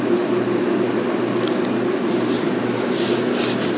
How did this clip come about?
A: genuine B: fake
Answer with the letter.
A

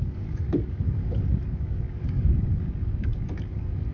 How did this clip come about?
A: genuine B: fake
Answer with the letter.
B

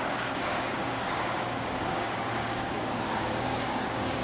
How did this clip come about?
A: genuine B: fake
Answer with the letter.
B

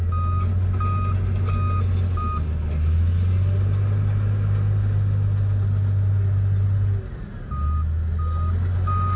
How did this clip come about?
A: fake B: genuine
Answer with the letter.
B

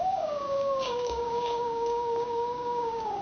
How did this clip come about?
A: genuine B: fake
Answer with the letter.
B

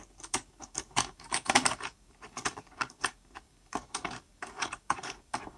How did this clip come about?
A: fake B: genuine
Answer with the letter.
A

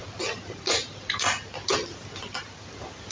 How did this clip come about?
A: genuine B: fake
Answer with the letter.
A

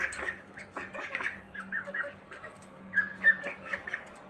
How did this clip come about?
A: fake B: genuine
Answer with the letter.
A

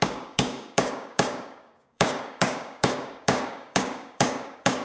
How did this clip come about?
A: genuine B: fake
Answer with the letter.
B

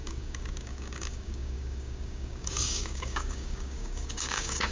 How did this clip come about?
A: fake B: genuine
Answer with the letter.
A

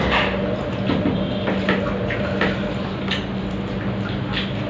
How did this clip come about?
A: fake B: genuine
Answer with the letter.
B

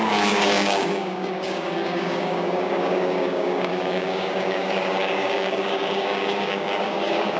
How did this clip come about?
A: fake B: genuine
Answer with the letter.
A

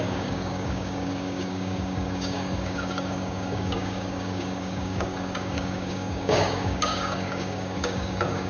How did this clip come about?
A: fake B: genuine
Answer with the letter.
A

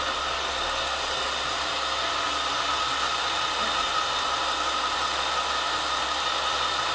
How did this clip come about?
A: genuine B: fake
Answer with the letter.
A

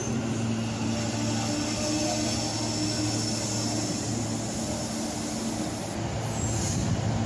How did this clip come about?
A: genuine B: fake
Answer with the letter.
A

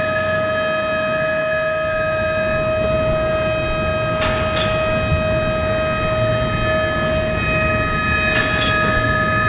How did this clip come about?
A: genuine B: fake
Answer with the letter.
A